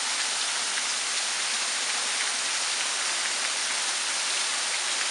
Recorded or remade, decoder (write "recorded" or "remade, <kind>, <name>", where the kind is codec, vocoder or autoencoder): recorded